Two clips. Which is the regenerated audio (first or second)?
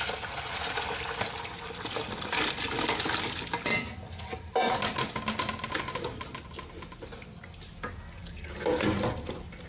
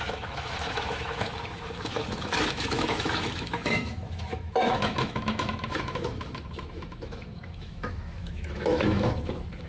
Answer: second